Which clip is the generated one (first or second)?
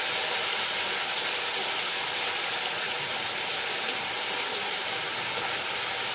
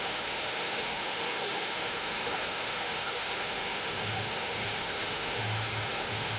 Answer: second